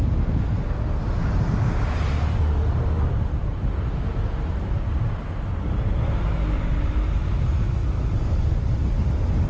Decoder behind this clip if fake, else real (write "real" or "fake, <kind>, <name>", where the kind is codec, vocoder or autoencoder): real